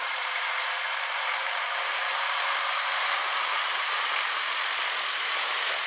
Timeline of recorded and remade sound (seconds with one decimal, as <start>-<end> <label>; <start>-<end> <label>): 0.0-4.8 remade; 4.8-5.9 recorded